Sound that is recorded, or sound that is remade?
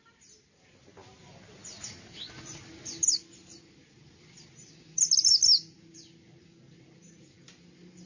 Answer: recorded